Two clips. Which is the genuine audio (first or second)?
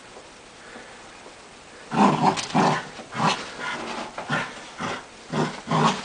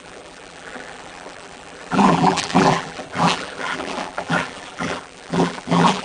first